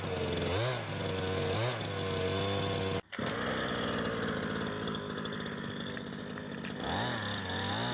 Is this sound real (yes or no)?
yes